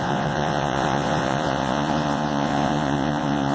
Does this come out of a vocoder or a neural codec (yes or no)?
yes